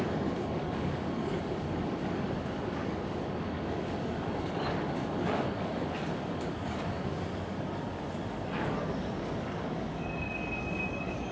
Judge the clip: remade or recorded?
remade